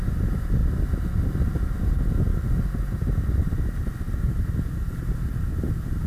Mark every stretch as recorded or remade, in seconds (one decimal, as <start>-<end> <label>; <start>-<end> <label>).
0.0-6.1 recorded